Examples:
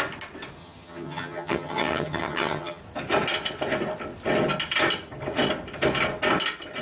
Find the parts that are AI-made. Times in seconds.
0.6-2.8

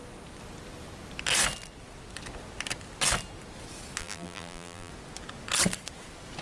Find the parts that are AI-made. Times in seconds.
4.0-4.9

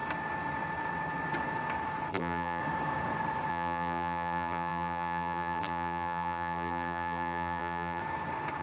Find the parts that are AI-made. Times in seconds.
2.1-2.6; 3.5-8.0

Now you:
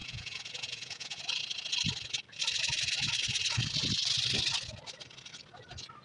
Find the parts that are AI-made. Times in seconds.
0.0-1.2

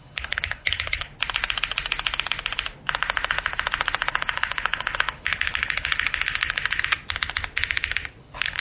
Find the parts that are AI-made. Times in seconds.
0.0-1.1; 4.1-6.6; 8.2-8.6

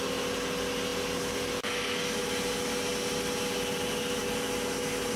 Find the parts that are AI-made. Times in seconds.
none

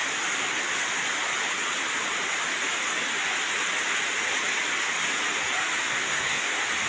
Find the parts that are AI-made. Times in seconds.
5.9-6.5